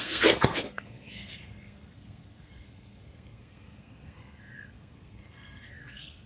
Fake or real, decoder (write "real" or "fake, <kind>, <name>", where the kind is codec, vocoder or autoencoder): fake, codec, SNAC